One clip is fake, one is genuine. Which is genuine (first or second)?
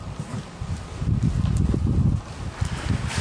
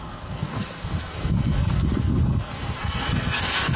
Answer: first